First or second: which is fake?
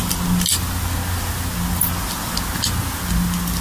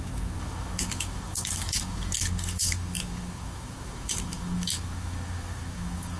second